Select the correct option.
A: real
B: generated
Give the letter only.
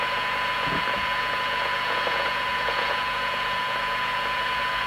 B